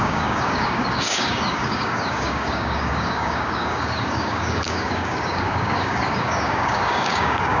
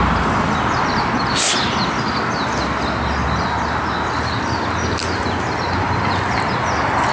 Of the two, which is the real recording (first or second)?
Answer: second